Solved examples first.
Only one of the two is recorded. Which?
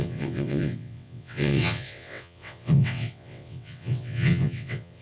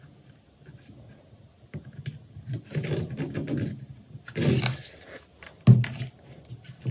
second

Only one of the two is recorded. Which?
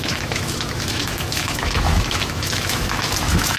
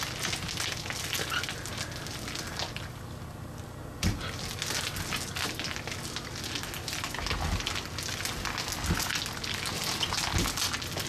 second